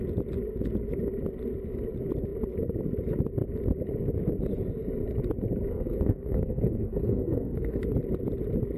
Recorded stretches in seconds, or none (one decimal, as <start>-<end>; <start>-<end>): 0.0-5.7; 7.8-8.8